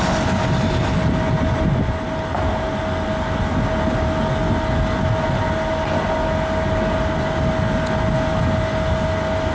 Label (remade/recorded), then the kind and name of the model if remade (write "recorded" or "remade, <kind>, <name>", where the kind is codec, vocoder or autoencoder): recorded